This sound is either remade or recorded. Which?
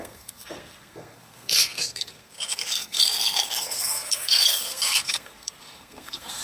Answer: remade